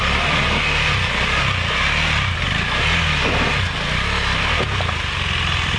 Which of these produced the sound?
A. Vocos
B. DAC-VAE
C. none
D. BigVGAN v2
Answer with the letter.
C